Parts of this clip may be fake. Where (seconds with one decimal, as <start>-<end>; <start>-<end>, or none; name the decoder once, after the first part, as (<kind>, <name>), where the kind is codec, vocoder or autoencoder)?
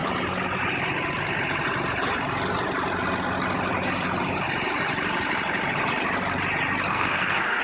6.9-7.6 (codec, SNAC)